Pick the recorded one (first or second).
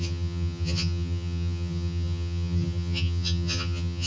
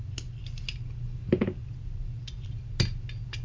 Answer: second